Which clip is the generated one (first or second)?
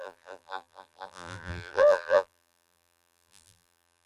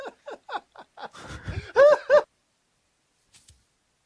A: first